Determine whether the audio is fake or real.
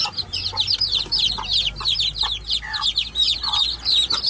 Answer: real